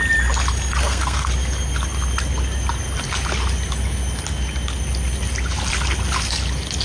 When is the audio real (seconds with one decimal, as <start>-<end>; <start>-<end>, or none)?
0.0-0.8; 1.3-6.8